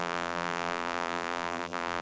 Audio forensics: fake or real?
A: fake